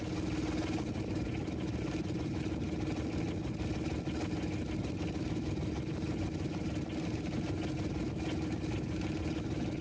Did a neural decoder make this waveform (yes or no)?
no